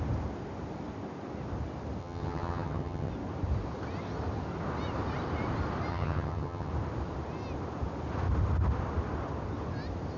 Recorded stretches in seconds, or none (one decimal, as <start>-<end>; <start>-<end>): 0.0-2.0; 3.1-5.9; 6.7-10.2